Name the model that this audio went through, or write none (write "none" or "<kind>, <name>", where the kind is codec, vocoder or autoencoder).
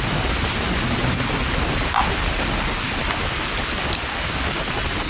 none